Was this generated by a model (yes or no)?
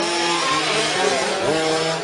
no